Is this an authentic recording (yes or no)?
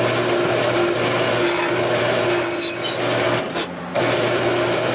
yes